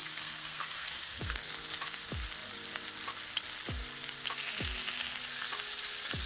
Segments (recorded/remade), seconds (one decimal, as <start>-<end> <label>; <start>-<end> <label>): 0.0-1.5 remade; 1.5-6.3 recorded